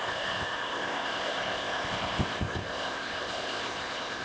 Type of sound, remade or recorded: remade